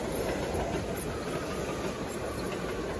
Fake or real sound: real